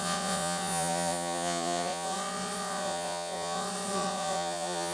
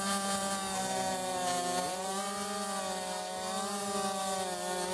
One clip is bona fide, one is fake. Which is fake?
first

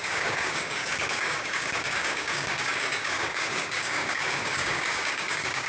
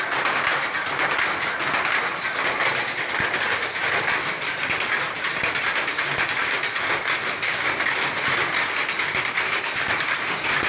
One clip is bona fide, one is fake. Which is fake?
first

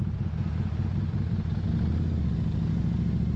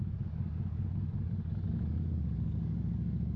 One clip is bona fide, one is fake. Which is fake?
second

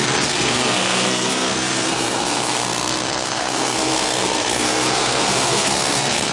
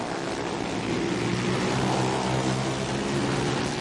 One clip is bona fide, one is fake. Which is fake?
first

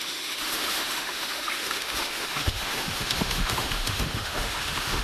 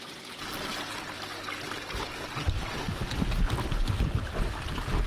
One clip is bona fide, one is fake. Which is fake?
first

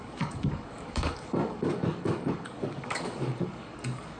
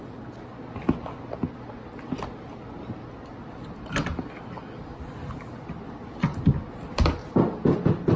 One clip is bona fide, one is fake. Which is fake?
first